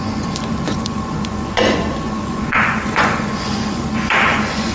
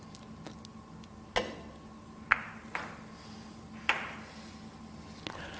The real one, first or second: second